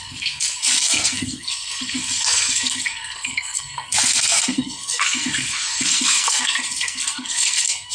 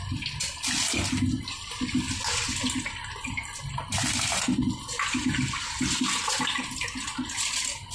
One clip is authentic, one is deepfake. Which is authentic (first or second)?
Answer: second